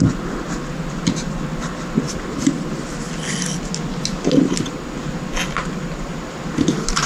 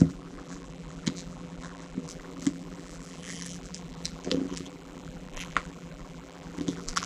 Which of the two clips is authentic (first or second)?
first